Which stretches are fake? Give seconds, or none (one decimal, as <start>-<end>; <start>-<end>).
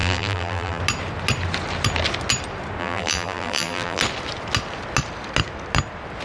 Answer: 0.0-0.8; 2.8-4.0